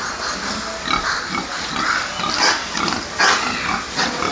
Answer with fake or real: real